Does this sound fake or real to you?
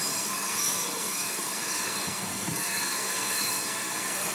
fake